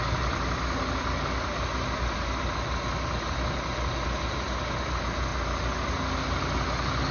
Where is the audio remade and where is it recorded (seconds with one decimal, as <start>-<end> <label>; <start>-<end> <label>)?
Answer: 0.0-7.1 recorded